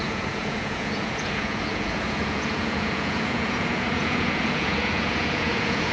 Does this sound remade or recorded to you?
remade